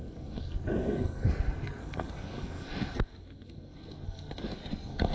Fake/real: fake